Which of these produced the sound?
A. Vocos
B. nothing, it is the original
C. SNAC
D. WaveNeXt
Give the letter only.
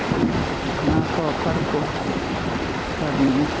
B